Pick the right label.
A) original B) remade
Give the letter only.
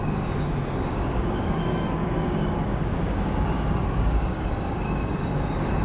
B